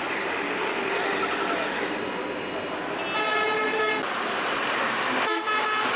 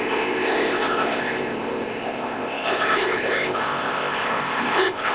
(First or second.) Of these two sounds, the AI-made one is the second